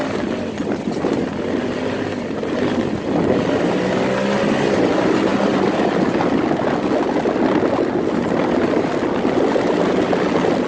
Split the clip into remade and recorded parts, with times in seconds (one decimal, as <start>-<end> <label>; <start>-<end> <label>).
0.0-10.7 recorded